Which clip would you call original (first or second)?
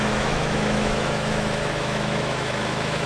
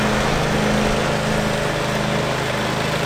second